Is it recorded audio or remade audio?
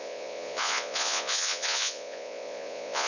remade